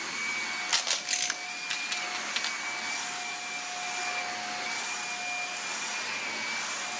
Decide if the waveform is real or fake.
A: real